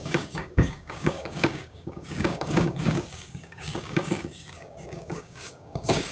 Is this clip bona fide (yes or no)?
no